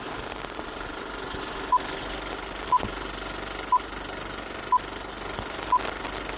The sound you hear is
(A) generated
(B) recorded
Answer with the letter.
B